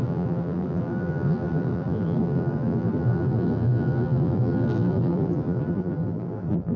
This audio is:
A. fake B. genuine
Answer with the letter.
A